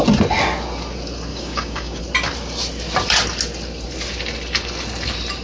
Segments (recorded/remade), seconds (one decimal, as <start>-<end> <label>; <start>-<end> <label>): 0.0-1.3 recorded; 1.3-2.0 remade; 2.0-5.4 recorded